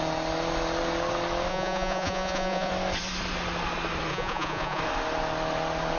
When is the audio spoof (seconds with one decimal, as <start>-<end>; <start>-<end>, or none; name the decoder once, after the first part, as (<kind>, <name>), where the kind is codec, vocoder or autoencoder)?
1.5-2.7 (vocoder, Vocos); 4.1-4.8

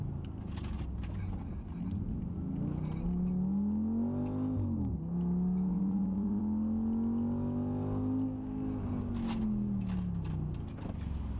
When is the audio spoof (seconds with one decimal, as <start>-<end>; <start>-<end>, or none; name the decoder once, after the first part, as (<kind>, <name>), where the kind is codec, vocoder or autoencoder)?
5.7-6.4 (vocoder, Vocos)

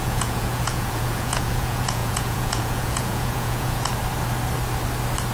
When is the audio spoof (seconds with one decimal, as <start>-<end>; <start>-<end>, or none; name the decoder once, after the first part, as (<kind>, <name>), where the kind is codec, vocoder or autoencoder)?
0.0-3.9 (vocoder, Vocos)

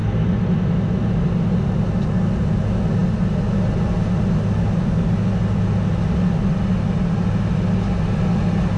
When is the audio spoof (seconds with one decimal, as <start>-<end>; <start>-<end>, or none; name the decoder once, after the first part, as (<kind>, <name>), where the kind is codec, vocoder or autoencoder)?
none

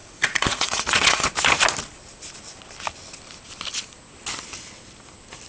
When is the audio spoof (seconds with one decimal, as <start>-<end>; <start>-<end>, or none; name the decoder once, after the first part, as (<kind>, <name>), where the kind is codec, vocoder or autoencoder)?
0.0-1.3 (vocoder, Vocos)

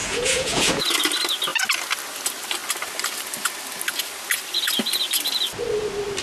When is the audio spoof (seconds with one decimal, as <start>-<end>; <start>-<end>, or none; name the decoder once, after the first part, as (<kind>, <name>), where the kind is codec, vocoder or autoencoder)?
0.0-0.8 (vocoder, Vocos)